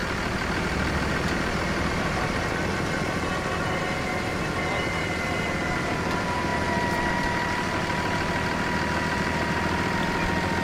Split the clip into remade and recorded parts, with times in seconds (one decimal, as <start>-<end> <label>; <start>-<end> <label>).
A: 0.0-1.1 recorded; 1.1-10.6 remade